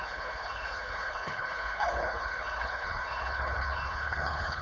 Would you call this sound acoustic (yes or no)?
no